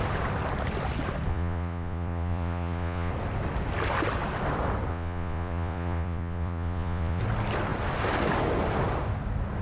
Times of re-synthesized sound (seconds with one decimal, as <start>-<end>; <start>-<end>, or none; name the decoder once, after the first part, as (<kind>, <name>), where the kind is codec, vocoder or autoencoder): 1.3-3.1 (vocoder, Vocos); 4.9-7.2